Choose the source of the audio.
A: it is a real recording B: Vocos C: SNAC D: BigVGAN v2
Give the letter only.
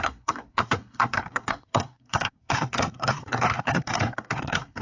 C